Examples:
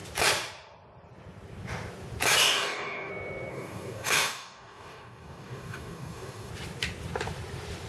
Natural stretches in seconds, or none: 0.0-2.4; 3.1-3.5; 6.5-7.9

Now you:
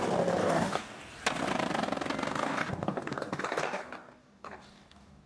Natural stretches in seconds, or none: 0.0-0.4; 1.0-2.4

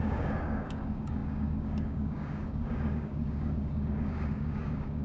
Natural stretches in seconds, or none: none

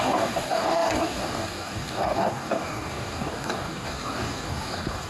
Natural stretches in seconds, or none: none